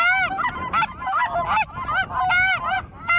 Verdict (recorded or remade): recorded